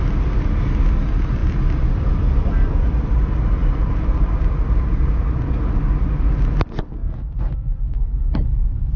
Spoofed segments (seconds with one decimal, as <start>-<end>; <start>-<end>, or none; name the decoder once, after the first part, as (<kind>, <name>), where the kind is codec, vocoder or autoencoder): 1.4-3.2 (vocoder, BigVGAN v2); 3.6-5.2; 7.0-9.0

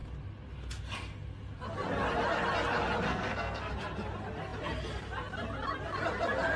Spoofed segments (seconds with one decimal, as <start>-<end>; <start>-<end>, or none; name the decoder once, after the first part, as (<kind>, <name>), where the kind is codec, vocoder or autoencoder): 3.1-3.7 (codec, SNAC)

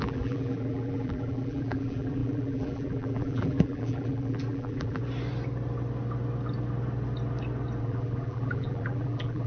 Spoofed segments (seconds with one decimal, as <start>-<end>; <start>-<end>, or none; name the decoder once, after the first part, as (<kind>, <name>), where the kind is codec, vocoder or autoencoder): 0.0-5.0 (vocoder, BigVGAN v2); 7.8-9.5

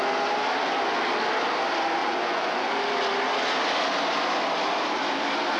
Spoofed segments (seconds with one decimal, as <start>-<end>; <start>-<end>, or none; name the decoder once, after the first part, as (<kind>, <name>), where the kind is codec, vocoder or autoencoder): 2.0-2.7 (vocoder, Vocos)

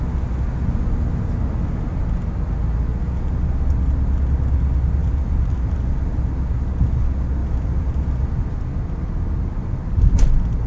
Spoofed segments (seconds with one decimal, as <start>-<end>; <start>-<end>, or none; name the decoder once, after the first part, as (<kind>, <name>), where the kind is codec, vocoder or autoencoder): 5.0-6.2 (vocoder, BigVGAN v2); 7.4-7.9

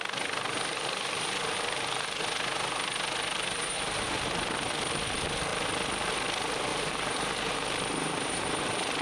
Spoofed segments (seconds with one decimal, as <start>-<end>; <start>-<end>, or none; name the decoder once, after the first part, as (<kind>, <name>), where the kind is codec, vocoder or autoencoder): 6.7-9.0 (vocoder, BigVGAN v2)

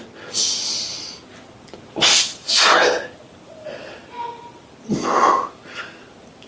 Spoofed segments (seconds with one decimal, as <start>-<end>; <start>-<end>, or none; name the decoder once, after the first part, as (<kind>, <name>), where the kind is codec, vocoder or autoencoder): none